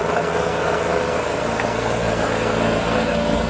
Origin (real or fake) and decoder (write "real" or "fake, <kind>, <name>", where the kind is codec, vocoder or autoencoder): fake, codec, SNAC